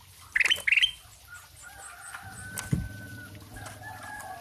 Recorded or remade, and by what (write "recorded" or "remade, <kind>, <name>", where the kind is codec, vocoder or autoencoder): recorded